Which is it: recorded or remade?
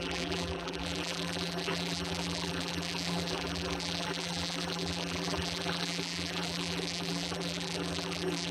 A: remade